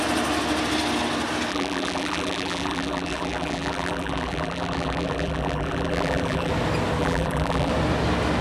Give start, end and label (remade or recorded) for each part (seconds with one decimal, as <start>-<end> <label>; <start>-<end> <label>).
0.0-1.5 recorded; 1.5-6.5 remade; 6.5-7.0 recorded; 7.0-7.7 remade; 7.7-8.4 recorded

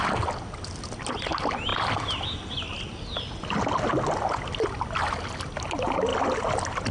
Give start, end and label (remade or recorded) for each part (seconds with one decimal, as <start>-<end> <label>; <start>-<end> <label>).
0.0-6.9 recorded

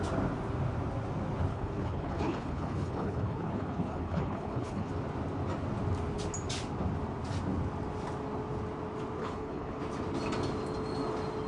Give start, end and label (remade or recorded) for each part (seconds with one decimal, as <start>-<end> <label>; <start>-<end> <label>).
0.0-1.5 recorded; 1.5-4.9 remade; 4.9-9.2 recorded; 9.2-9.8 remade; 9.8-11.5 recorded

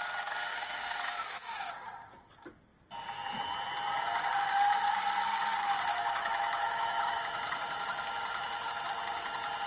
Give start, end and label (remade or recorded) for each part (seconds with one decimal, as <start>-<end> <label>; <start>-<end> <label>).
0.0-0.5 recorded; 0.5-1.7 remade; 1.7-5.9 recorded; 5.9-7.2 remade; 7.2-9.7 recorded

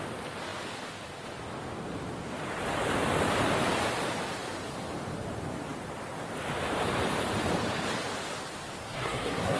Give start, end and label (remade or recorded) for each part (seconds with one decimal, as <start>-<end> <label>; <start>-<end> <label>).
0.0-8.8 recorded; 8.8-9.6 remade

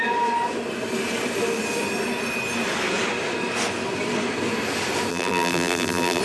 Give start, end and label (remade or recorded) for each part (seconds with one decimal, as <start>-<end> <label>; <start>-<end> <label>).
0.0-5.1 recorded; 5.1-6.2 remade